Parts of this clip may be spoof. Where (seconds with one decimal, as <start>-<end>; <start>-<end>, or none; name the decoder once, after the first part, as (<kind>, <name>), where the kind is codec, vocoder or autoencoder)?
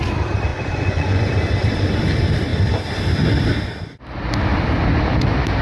0.5-1.3 (vocoder, Vocos)